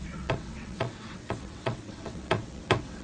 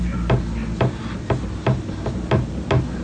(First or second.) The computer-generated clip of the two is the first